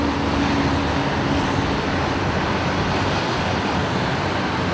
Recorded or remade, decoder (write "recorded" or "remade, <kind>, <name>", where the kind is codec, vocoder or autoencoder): recorded